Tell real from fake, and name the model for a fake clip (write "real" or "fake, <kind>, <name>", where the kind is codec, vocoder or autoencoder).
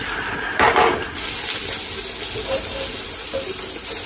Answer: real